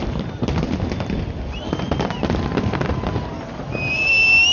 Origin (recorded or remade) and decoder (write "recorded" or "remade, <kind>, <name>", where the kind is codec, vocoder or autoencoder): recorded